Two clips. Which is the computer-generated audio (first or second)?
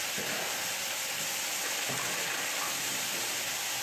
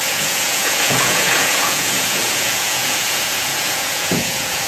second